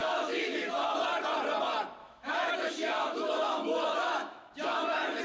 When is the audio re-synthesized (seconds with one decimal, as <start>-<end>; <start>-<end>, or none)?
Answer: 0.0-0.7; 2.0-5.2